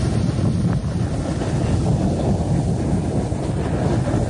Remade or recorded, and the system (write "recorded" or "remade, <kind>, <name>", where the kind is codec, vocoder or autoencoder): recorded